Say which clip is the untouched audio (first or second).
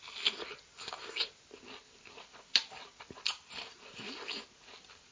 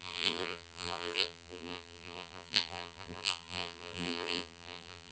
first